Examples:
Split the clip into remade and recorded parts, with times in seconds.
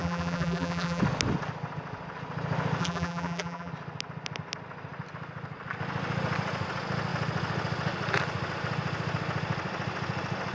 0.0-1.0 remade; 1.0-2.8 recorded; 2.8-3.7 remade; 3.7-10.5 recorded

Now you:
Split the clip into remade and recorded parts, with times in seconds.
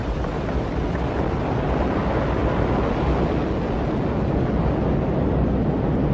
0.0-6.1 recorded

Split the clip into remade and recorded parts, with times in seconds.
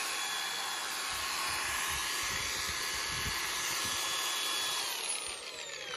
0.0-6.0 recorded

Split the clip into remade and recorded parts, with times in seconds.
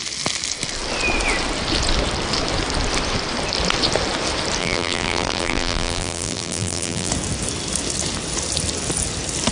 0.0-4.6 recorded; 4.6-7.1 remade; 7.1-9.5 recorded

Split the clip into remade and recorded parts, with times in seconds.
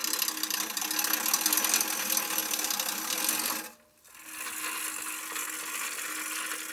0.0-6.7 recorded